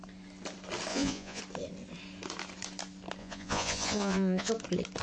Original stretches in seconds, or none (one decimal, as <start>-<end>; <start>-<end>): 0.0-0.9; 1.4-3.2; 4.5-5.0